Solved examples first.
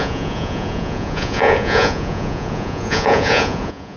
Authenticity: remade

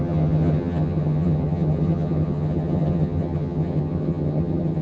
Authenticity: remade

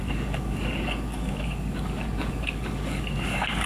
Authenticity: remade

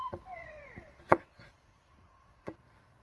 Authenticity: remade